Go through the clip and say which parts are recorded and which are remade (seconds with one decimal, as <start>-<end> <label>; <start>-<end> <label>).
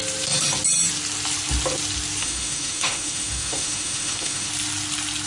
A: 0.0-2.2 recorded; 2.2-4.5 remade; 4.5-5.3 recorded